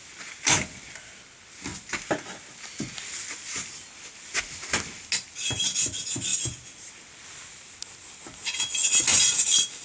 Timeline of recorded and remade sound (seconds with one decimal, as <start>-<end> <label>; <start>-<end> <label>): 0.0-9.8 recorded